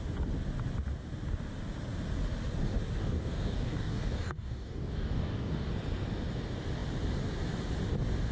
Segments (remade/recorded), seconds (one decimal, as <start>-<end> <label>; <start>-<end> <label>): 0.0-3.0 recorded; 3.0-5.7 remade; 5.7-8.3 recorded